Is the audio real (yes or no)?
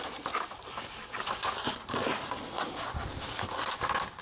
yes